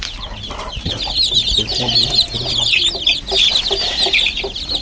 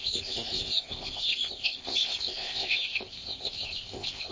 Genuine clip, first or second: first